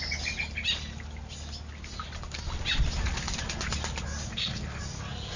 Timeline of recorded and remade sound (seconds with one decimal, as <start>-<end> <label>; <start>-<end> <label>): 0.0-4.3 recorded; 4.3-4.8 remade; 4.8-5.4 recorded